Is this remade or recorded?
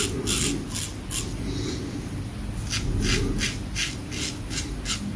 recorded